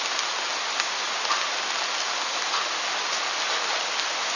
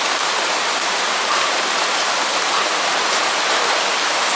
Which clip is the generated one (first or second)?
second